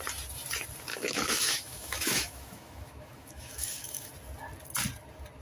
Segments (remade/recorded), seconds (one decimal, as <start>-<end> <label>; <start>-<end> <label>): 0.0-0.9 recorded; 0.9-4.1 remade; 4.1-5.4 recorded

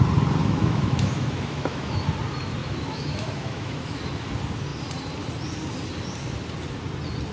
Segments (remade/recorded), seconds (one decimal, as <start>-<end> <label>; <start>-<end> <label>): 0.0-0.4 recorded; 0.4-2.0 remade; 2.0-2.6 recorded; 2.6-4.0 remade; 4.0-7.3 recorded

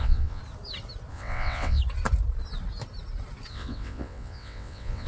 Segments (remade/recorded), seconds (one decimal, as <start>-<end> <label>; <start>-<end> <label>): 0.0-0.4 remade; 0.4-1.1 recorded; 1.1-1.8 remade; 1.8-3.5 recorded; 3.5-5.1 remade

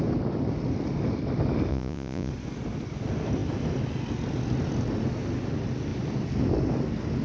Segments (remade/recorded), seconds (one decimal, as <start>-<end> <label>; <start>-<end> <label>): 0.0-1.7 recorded; 1.7-2.3 remade; 2.3-7.2 recorded

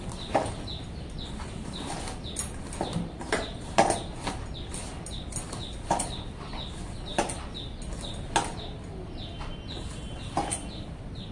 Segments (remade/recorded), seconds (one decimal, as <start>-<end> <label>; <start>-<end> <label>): 0.0-11.3 recorded

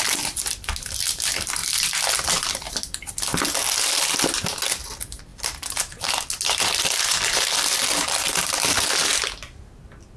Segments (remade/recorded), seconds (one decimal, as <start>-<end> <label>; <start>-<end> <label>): 0.0-10.2 recorded

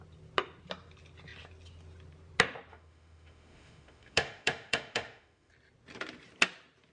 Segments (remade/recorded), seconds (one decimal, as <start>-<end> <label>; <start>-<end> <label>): 0.0-2.7 recorded; 2.7-5.5 remade; 5.5-6.9 recorded